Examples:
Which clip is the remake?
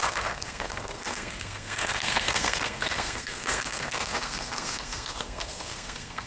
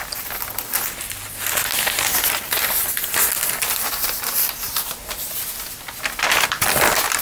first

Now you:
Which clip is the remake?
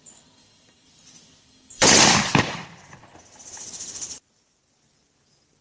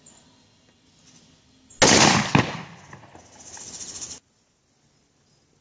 first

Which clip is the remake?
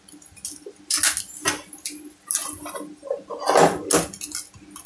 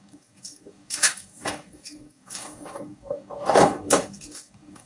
second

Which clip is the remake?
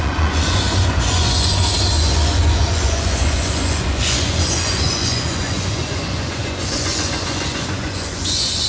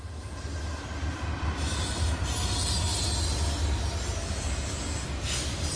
first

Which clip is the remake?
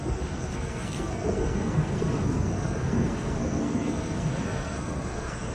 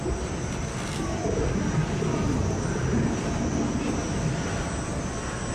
first